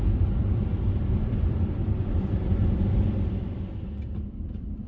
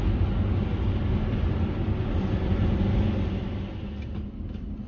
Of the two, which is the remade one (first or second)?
first